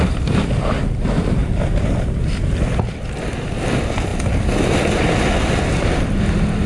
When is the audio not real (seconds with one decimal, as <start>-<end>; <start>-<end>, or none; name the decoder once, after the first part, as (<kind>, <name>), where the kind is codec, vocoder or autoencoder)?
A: 1.4-3.2 (vocoder, BigVGAN v2)